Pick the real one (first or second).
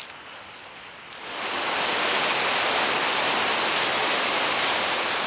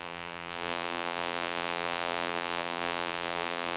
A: first